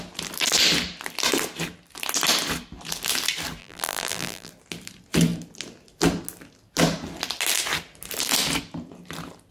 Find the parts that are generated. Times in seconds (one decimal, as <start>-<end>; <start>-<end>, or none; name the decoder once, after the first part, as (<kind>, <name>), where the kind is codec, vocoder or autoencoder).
3.6-4.5 (vocoder, BigVGAN v2)